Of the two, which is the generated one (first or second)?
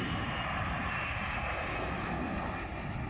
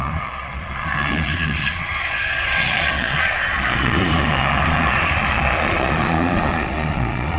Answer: second